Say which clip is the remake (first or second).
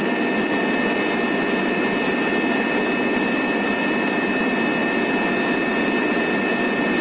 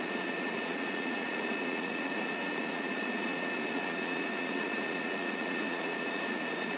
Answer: second